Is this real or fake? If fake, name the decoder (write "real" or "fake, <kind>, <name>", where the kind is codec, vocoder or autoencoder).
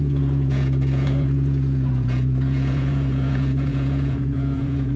fake, vocoder, Vocos